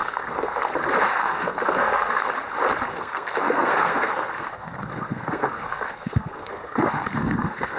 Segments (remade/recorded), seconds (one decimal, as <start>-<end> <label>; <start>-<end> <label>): 0.0-0.7 remade; 0.7-1.1 recorded; 1.1-2.3 remade; 2.3-2.9 recorded; 2.9-7.8 remade